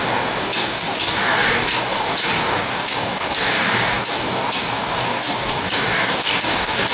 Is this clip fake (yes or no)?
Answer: yes